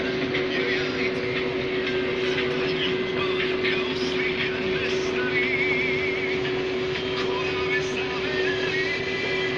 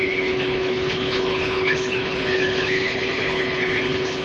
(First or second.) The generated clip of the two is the second